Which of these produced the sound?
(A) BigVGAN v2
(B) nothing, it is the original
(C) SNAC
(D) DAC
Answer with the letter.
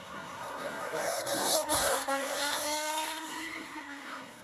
C